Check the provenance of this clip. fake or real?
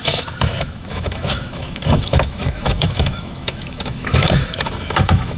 fake